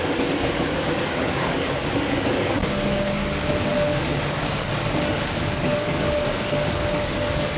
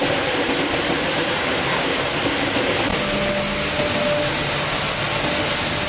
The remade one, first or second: first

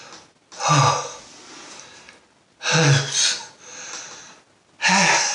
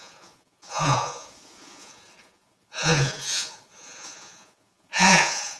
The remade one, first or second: second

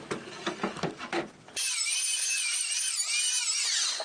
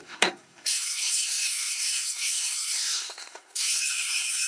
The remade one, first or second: second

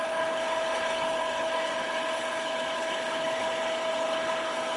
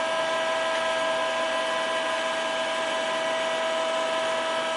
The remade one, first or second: first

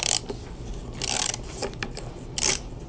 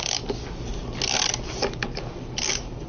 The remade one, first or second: first